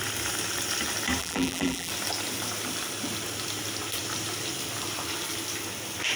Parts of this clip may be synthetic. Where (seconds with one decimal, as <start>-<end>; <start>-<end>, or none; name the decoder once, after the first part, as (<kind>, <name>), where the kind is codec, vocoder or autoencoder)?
1.2-1.9 (vocoder, BigVGAN v2)